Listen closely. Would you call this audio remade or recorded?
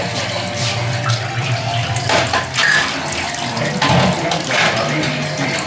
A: recorded